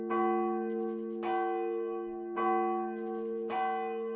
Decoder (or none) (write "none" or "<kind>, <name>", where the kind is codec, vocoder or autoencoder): none